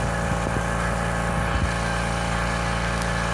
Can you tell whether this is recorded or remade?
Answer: recorded